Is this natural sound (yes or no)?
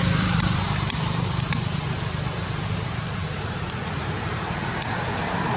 no